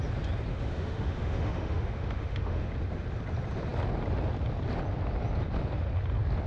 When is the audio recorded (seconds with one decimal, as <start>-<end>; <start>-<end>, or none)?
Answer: 0.0-0.5; 2.7-6.5